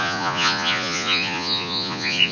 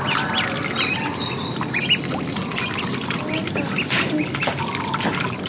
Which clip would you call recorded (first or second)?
second